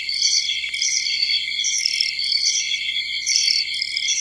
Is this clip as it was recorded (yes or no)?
yes